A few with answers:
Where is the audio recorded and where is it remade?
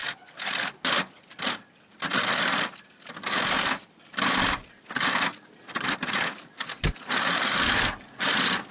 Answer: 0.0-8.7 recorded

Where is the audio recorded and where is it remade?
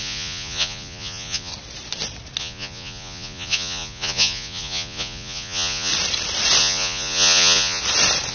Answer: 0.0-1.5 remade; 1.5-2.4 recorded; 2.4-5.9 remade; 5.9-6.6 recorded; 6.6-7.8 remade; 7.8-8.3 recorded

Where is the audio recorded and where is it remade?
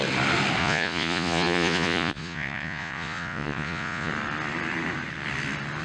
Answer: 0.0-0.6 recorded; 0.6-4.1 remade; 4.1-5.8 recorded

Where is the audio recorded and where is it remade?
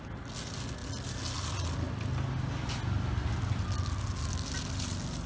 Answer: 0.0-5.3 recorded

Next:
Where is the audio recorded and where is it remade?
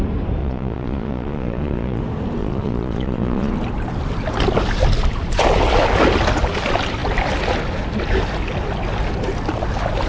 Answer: 0.0-0.4 recorded; 0.4-2.0 remade; 2.0-2.4 recorded; 2.4-3.5 remade; 3.5-10.1 recorded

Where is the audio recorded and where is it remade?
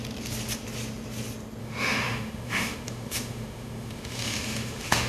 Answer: 0.0-1.6 recorded; 1.6-5.1 remade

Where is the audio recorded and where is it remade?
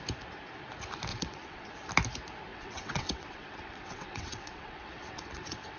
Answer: 0.0-1.1 recorded; 1.1-1.7 remade; 1.7-2.5 recorded; 2.5-5.8 remade